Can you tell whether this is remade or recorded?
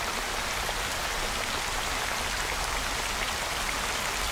recorded